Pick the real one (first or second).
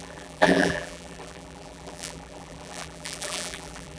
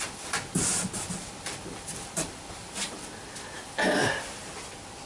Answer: second